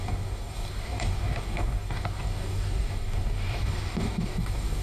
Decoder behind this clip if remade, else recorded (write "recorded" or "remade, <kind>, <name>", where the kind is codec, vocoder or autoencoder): remade, codec, DAC